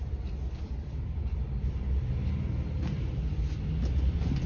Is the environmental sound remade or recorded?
recorded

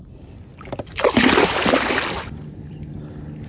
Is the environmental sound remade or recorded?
recorded